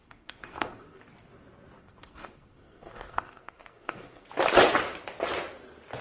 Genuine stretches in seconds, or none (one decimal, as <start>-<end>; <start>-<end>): 1.0-1.8; 4.3-6.0